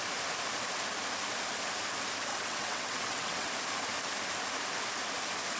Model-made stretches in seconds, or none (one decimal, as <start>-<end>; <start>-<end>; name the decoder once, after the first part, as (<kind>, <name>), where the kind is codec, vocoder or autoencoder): 2.3-3.5 (vocoder, WaveNeXt)